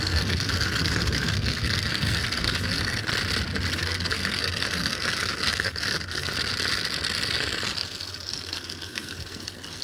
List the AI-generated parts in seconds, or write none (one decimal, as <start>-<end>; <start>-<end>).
0.0-3.1; 3.7-6.3; 7.8-9.8